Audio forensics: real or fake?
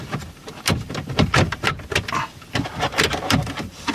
fake